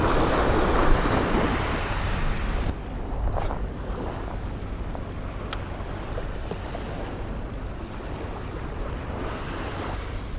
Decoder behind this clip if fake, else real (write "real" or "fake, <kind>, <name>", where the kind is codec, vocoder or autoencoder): real